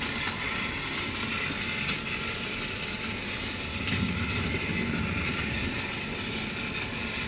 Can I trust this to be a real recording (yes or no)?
yes